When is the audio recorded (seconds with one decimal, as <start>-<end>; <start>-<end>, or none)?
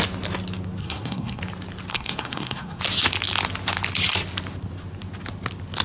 0.0-0.8; 1.4-1.9; 2.8-5.8